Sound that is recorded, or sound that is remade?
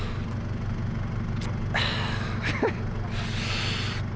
recorded